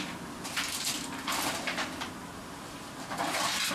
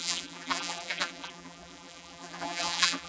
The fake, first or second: second